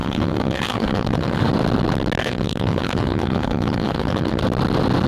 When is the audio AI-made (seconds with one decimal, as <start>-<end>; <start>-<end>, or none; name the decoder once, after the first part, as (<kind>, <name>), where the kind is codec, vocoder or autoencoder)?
0.0-1.5 (autoencoder, DAC-VAE); 2.2-4.4